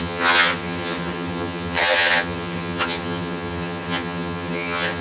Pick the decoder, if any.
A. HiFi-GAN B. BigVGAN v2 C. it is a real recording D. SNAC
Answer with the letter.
A